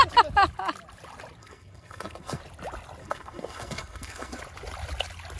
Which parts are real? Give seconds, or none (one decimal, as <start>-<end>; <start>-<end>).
0.0-1.4; 2.4-3.0; 4.4-5.4